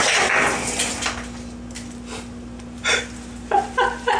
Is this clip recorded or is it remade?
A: recorded